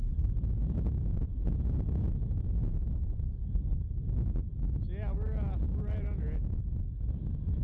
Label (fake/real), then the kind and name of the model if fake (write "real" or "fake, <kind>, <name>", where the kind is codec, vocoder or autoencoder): real